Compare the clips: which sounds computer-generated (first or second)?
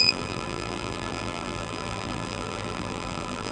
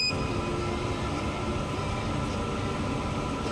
first